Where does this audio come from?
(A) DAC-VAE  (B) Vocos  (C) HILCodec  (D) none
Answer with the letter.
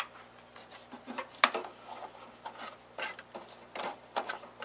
D